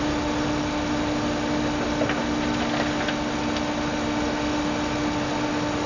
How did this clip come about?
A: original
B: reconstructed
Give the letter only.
A